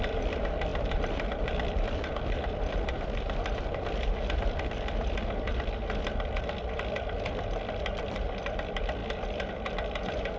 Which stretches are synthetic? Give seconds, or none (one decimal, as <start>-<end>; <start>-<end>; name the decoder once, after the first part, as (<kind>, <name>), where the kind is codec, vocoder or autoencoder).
0.0-10.4 (vocoder, BigVGAN v2)